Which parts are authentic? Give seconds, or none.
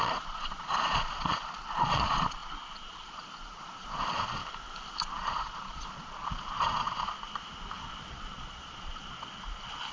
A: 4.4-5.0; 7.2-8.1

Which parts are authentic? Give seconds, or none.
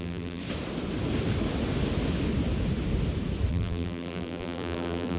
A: 0.4-3.5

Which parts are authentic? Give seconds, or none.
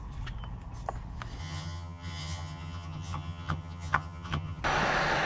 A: 0.0-1.4; 4.6-5.3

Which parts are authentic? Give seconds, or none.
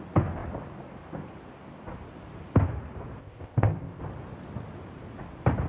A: 0.0-3.2; 4.0-5.7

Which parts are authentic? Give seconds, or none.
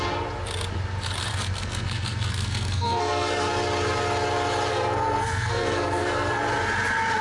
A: 0.0-1.3; 3.5-4.7; 6.4-7.2